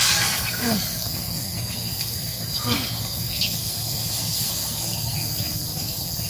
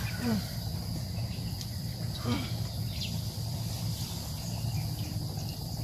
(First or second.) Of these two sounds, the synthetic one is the first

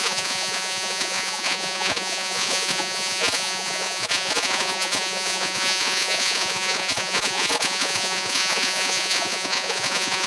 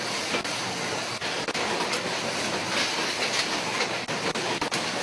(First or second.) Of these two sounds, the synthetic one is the first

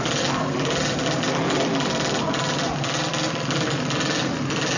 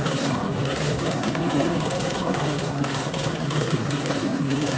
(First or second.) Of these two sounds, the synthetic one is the second